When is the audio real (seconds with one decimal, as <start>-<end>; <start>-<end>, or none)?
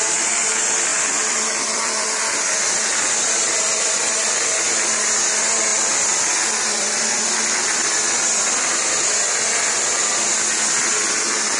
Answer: 0.0-0.9; 1.5-5.7; 7.3-11.6